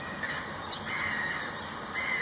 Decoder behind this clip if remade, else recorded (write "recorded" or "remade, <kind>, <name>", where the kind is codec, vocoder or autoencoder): recorded